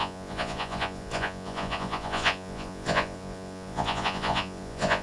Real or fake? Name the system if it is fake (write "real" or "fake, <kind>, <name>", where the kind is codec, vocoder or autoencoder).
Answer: fake, vocoder, Vocos